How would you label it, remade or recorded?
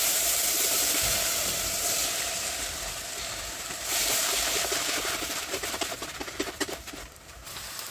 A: remade